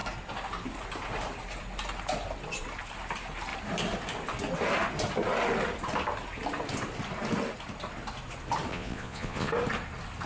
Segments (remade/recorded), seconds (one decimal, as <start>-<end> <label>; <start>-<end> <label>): 0.0-8.7 recorded; 8.7-9.5 remade; 9.5-10.3 recorded